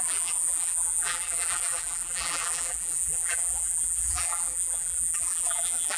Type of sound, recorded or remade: remade